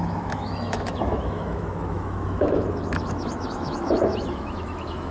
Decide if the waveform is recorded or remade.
remade